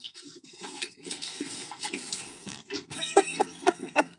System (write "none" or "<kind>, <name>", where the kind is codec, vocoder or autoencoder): codec, SNAC